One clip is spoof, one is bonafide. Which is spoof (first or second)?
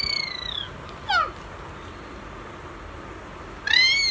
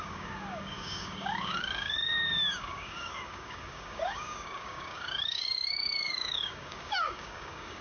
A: second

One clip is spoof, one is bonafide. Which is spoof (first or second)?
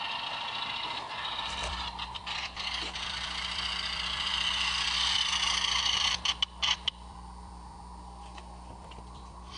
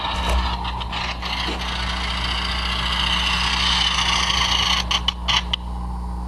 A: first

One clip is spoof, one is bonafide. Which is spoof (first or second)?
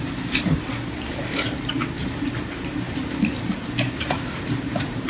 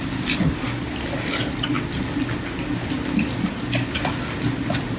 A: first